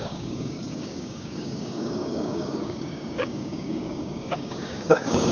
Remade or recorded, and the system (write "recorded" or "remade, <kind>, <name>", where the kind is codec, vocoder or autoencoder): remade, codec, DAC